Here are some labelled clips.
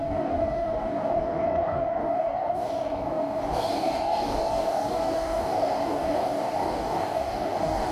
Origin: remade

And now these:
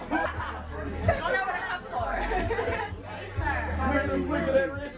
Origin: recorded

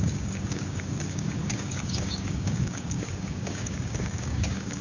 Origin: remade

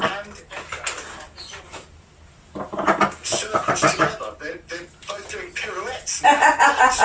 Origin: recorded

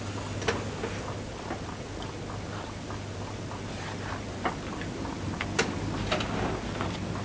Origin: recorded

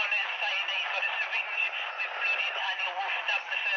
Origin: recorded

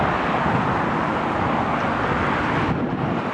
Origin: recorded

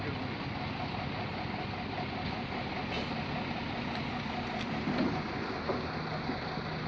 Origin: recorded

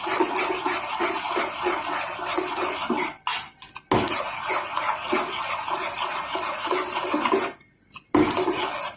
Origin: recorded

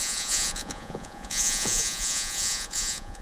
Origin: remade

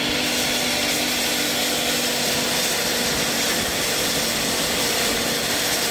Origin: recorded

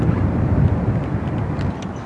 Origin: recorded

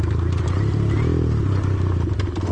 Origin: recorded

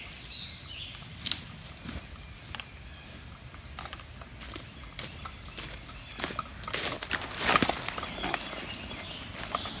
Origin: recorded